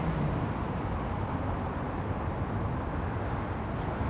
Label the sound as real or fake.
real